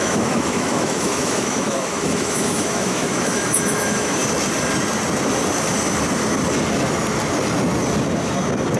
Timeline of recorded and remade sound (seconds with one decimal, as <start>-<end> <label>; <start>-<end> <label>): 0.0-4.2 remade; 4.2-8.8 recorded